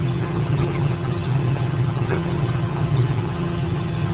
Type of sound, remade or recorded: remade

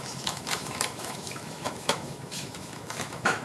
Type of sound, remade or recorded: remade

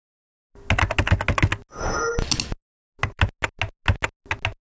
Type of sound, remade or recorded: recorded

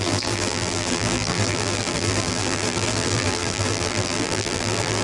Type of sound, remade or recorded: remade